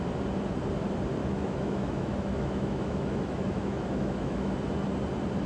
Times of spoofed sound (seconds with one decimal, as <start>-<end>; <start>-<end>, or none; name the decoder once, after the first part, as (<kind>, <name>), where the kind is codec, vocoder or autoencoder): 1.2-4.5 (autoencoder, DAC-VAE)